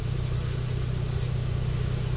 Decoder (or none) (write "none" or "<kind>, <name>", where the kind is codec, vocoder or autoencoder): none